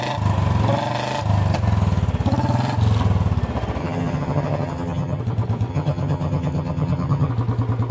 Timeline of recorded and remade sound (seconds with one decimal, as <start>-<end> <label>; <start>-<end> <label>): 0.0-3.8 recorded; 3.8-5.2 remade; 5.2-5.7 recorded; 5.7-7.3 remade; 7.3-7.9 recorded